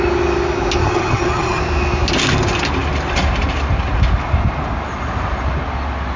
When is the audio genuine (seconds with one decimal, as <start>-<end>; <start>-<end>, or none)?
0.0-0.8; 1.6-6.2